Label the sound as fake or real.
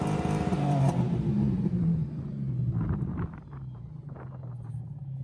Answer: fake